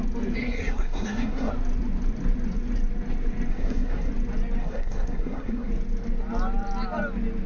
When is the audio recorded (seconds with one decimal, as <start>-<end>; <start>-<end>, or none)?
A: 0.0-0.4; 1.5-3.5; 4.1-4.6; 5.7-7.5